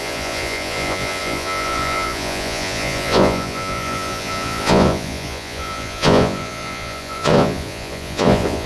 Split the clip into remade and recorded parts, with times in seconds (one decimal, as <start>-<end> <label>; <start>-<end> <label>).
0.0-8.7 remade